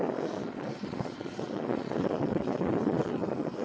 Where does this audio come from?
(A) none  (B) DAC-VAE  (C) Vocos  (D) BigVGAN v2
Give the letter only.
C